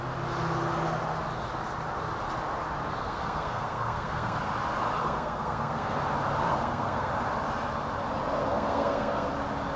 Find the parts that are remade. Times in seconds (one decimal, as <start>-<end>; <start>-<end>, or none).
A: 3.0-4.4; 5.0-6.0; 6.4-7.1; 8.4-9.3